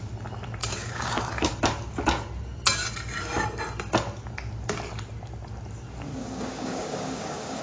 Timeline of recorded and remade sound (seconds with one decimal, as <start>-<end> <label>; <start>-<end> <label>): 0.0-0.6 recorded; 0.6-1.5 remade; 1.5-6.2 recorded; 6.2-7.6 remade